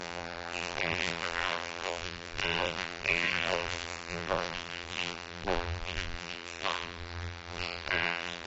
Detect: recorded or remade remade